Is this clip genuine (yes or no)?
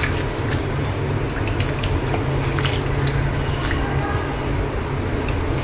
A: yes